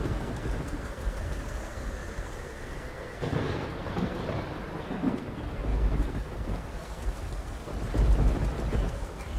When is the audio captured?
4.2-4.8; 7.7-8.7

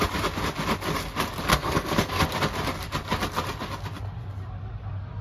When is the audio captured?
0.0-1.5; 2.2-5.2

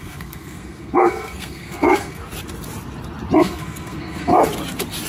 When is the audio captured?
2.2-3.4; 4.3-5.1

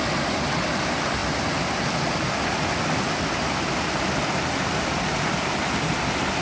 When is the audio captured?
0.0-6.4